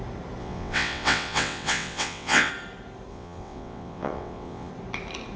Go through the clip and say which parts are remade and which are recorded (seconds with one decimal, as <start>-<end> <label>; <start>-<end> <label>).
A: 0.0-0.4 recorded; 0.4-2.5 remade; 2.5-3.1 recorded; 3.1-4.7 remade; 4.7-5.4 recorded

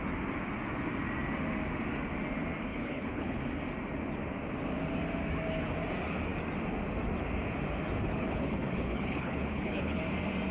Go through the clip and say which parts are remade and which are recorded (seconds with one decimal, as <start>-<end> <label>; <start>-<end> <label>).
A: 0.0-2.7 recorded; 2.7-3.4 remade; 3.4-8.1 recorded; 8.1-10.0 remade; 10.0-10.5 recorded

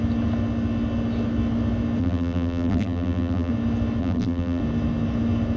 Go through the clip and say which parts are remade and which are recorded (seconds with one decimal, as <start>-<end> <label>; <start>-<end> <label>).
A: 0.0-2.0 recorded; 2.0-3.5 remade; 3.5-4.0 recorded; 4.0-4.6 remade; 4.6-5.6 recorded

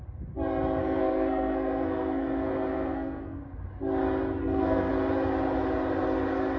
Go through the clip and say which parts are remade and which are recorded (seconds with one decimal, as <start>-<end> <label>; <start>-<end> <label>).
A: 0.0-0.8 recorded; 0.8-3.4 remade; 3.4-4.4 recorded; 4.4-4.9 remade; 4.9-6.6 recorded